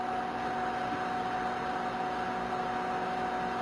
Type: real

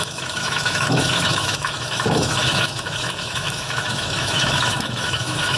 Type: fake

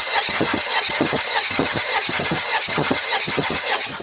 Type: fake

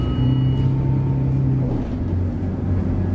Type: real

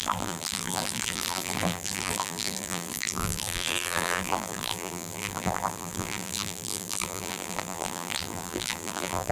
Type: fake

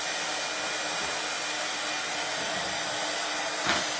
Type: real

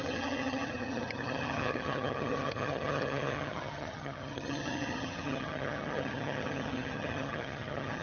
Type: fake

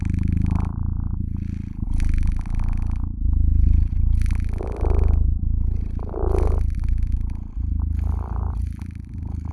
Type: real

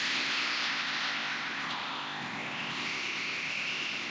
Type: fake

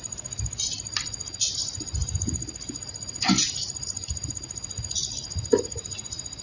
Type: real